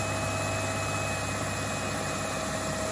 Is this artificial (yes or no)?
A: no